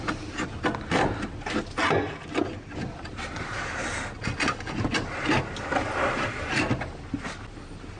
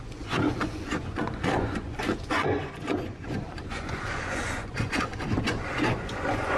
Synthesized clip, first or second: second